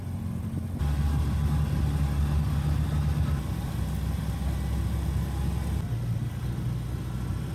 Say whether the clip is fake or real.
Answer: real